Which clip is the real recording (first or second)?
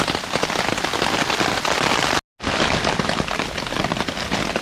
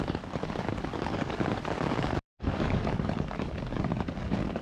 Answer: first